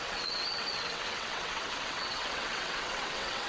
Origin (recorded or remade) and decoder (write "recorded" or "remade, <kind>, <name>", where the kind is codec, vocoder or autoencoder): remade, vocoder, WaveNeXt